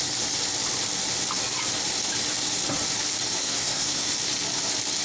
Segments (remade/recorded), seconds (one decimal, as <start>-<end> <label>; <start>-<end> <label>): 0.0-3.4 recorded; 3.4-4.1 remade; 4.1-5.0 recorded